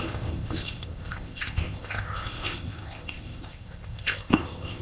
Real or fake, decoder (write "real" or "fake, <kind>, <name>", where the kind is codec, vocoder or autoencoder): fake, codec, ZipCodec